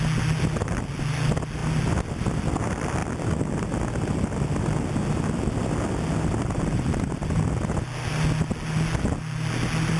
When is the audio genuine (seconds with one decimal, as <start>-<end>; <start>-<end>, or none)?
0.0-10.0